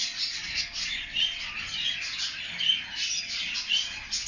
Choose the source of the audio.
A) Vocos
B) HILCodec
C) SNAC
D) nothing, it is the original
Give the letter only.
D